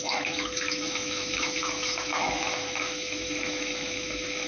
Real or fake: fake